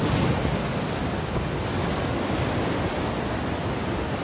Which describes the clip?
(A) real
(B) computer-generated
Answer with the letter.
A